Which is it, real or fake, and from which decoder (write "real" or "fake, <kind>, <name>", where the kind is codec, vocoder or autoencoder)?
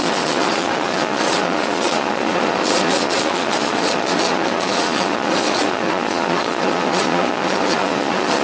fake, vocoder, Vocos